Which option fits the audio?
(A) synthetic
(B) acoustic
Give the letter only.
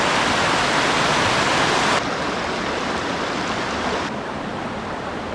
B